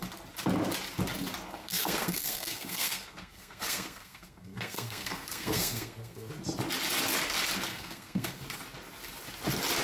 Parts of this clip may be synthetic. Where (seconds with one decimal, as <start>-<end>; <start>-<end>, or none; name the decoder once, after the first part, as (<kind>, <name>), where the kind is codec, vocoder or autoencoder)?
1.6-6.3 (codec, SNAC); 7.7-8.4